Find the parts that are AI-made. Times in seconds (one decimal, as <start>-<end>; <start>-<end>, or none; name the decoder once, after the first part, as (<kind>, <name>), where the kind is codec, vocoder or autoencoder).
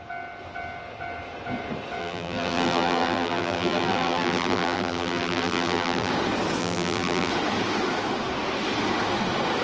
2.0-6.1 (vocoder, BigVGAN v2); 6.6-7.3